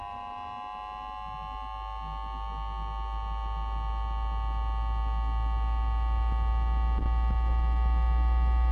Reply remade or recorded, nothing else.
recorded